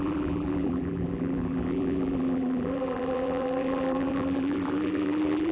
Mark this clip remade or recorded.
remade